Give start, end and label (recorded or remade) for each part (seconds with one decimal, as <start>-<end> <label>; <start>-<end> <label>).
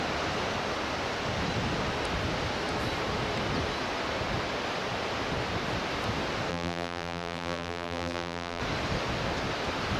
0.0-6.5 recorded; 6.5-8.6 remade; 8.6-10.0 recorded